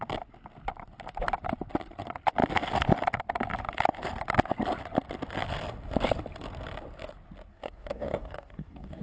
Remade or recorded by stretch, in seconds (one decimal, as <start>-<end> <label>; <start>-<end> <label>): 0.0-7.5 recorded; 7.5-9.0 remade